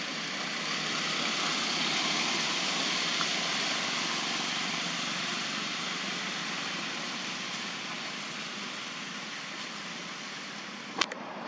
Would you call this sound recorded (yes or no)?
no